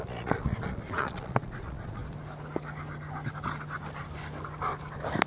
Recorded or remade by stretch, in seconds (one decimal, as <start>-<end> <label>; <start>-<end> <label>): 0.0-2.0 remade; 2.0-5.3 recorded